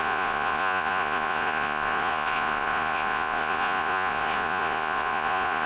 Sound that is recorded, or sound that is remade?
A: remade